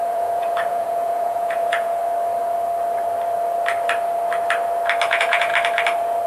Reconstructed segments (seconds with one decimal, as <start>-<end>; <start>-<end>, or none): 0.0-2.0; 5.1-5.5